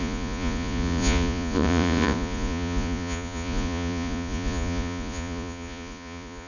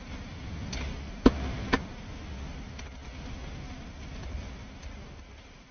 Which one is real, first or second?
second